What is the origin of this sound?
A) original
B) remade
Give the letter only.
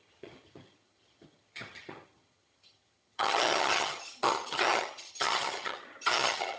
B